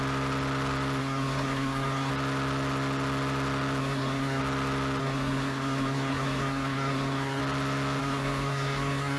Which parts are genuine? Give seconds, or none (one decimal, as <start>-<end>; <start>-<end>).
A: 0.0-1.0; 2.1-3.8; 4.4-5.0; 7.4-8.0